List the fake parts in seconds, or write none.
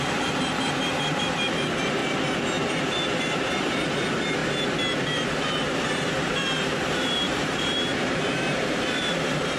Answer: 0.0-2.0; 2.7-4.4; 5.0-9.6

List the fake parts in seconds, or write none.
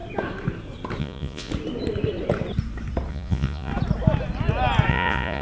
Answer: 1.0-1.5; 3.1-3.7; 4.9-5.4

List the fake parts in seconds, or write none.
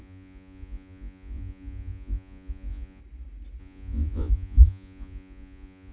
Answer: 0.0-3.0; 3.6-5.9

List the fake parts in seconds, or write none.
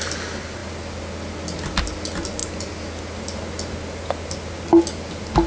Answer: none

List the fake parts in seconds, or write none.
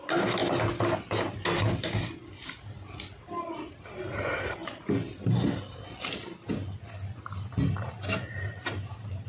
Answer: 0.0-0.4; 3.2-4.6; 8.5-9.3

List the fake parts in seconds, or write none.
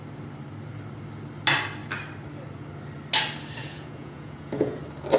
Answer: 3.6-4.8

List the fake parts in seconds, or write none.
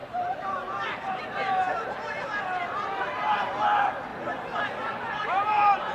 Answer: 0.0-4.1; 5.1-5.9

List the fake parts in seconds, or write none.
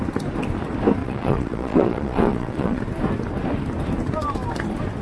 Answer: 1.0-2.8